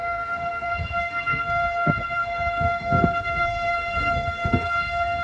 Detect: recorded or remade remade